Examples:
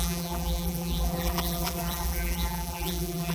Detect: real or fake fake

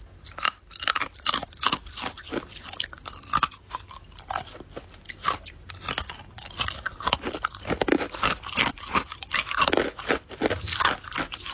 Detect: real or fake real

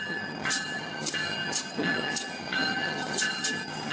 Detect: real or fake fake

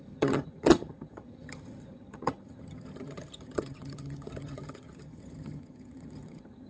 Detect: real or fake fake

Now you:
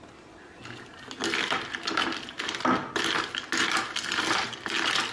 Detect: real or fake real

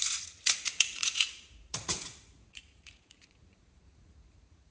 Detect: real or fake fake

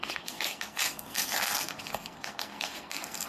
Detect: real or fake fake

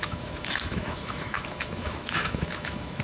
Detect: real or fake fake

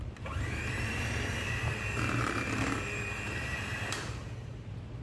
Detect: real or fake fake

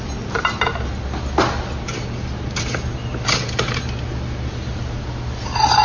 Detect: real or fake real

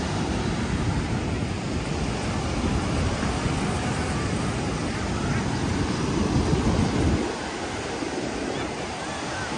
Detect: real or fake real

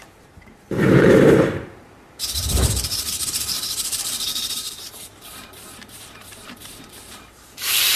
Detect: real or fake fake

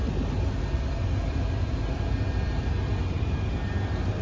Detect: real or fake real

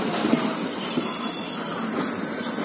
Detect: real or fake real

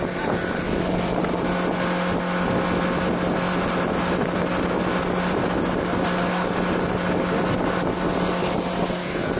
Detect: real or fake real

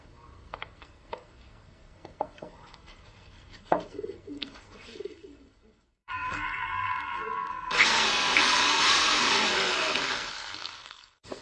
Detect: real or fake fake